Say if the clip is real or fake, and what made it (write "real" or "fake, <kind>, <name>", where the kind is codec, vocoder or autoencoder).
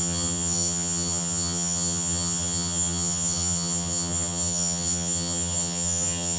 fake, vocoder, HiFi-GAN